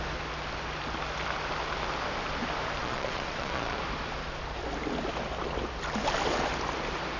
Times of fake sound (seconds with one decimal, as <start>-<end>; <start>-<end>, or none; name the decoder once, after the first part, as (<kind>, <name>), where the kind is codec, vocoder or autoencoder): 2.8-3.8 (vocoder, Vocos)